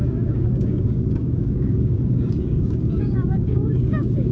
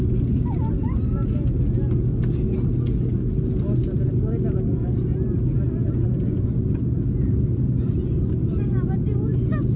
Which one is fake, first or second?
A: first